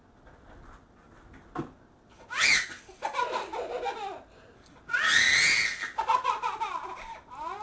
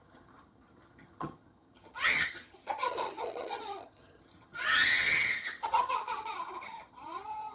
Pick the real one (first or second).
first